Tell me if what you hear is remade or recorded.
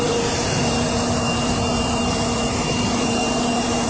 remade